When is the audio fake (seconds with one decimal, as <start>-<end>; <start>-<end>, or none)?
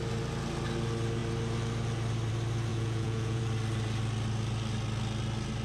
2.7-3.4